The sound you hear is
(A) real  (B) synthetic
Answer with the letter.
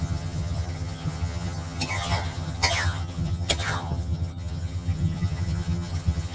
B